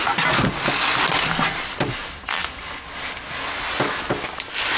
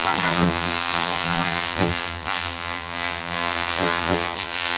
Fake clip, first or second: second